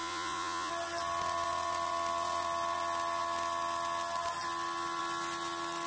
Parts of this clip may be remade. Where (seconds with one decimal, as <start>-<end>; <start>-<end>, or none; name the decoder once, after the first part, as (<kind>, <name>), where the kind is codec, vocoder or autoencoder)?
0.0-0.7 (vocoder, Vocos)